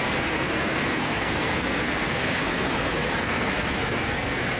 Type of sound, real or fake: fake